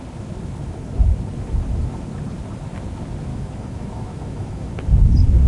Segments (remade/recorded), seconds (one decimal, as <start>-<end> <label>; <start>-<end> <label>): 0.0-3.3 recorded; 3.3-4.7 remade; 4.7-5.5 recorded